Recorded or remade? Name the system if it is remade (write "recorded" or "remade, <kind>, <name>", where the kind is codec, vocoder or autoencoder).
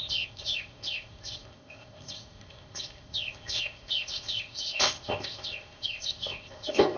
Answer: remade, codec, ZipCodec